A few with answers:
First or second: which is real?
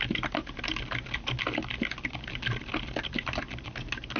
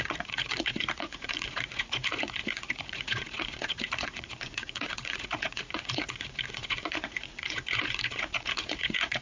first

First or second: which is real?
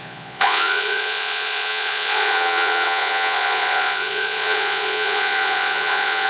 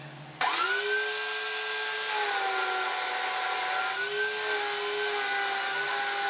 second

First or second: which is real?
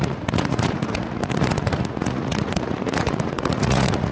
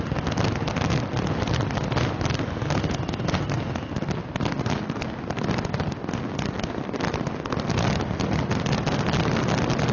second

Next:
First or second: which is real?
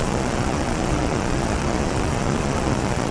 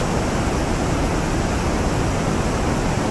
second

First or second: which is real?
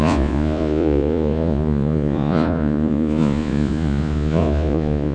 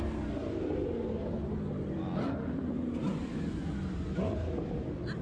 second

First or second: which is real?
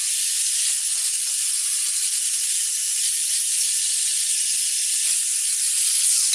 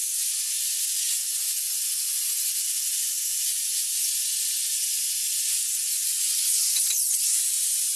first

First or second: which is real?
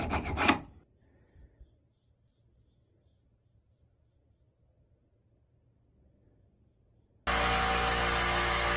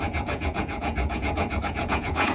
first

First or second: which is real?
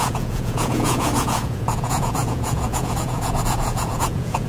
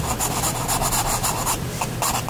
second